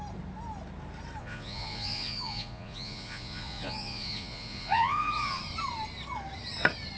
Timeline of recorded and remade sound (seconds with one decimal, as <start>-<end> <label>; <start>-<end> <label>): 0.0-1.2 recorded; 1.2-5.4 remade; 5.4-7.0 recorded